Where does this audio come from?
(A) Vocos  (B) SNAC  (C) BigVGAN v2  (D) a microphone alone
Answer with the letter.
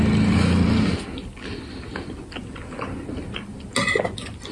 D